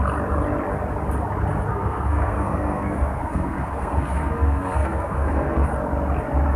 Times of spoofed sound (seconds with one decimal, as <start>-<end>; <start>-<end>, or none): 1.7-5.7